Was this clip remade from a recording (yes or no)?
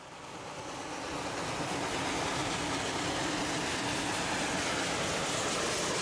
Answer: no